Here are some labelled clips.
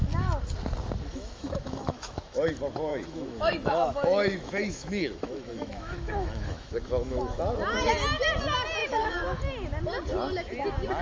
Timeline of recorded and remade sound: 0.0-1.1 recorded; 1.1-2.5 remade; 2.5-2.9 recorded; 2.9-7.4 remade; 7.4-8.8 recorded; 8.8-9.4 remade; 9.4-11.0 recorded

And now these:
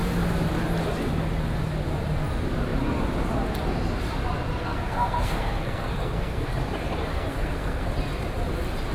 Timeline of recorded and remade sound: 0.0-4.6 recorded; 4.6-6.5 remade; 6.5-7.1 recorded; 7.1-7.9 remade; 7.9-8.9 recorded

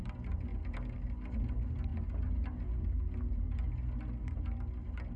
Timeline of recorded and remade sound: 0.0-5.2 recorded